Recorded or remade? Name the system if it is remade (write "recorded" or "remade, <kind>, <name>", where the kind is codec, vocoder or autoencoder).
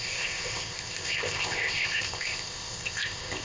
remade, codec, ZipCodec